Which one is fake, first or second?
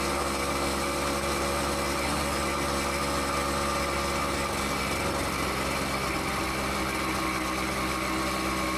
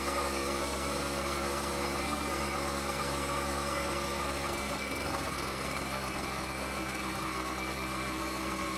second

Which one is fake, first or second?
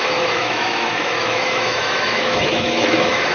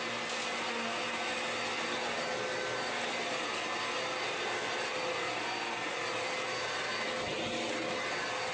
first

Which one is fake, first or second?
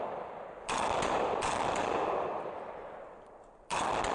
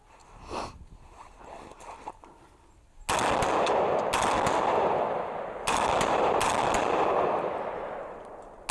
first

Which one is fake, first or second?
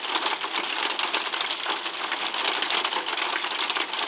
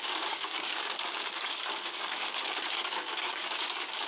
second